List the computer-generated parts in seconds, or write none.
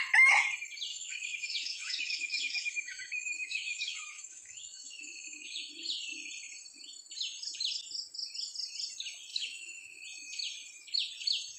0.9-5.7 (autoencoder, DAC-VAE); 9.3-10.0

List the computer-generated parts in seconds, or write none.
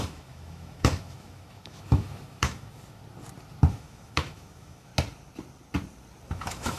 0.0-3.0 (autoencoder, DAC-VAE); 3.7-4.9; 6.3-6.8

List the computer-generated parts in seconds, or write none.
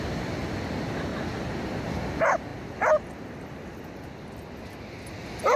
none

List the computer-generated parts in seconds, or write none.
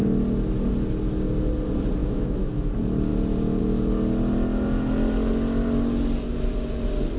2.0-2.7 (autoencoder, DAC-VAE)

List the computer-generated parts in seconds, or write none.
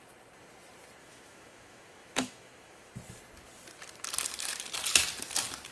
1.0-2.9 (autoencoder, DAC-VAE)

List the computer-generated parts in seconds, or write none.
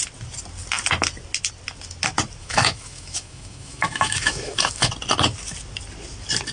2.4-4.9 (autoencoder, DAC-VAE)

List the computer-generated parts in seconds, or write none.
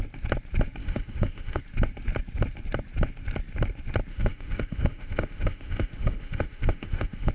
0.8-1.6 (autoencoder, DAC-VAE); 4.1-7.3